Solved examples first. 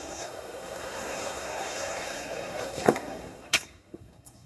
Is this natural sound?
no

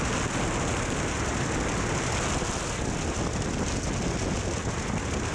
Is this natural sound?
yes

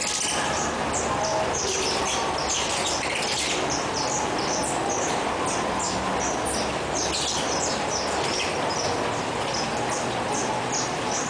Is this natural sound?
yes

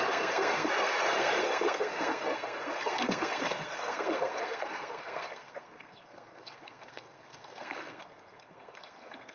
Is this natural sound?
no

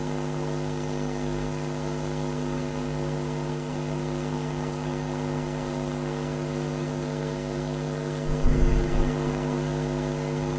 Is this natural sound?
no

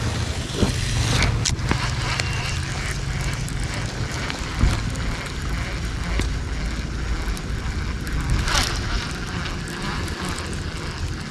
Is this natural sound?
yes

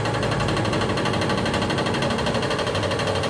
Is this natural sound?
yes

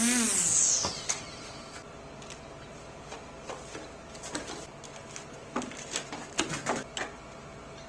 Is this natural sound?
yes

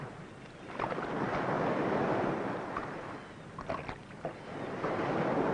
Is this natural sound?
yes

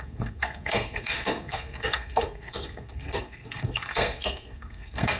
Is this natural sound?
no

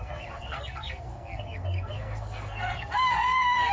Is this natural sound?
no